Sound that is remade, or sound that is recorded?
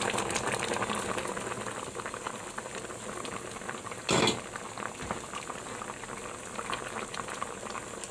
recorded